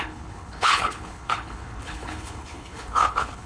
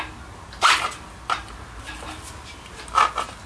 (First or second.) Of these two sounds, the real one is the second